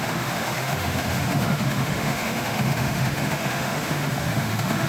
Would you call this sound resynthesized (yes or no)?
yes